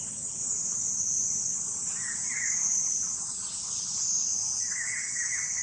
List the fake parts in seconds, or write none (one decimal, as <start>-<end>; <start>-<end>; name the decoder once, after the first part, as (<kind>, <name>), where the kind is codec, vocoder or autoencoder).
none